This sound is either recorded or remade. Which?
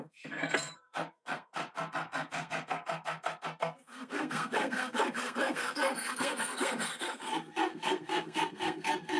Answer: remade